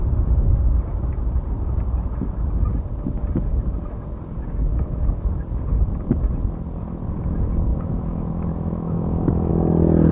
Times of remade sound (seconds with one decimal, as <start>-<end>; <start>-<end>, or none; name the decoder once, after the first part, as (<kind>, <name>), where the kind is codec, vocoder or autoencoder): 4.7-5.3 (autoencoder, DAC-VAE); 7.7-9.5